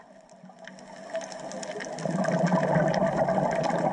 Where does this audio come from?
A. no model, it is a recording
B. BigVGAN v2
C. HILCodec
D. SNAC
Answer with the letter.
A